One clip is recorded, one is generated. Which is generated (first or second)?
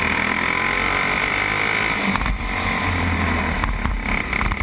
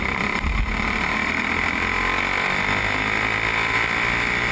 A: second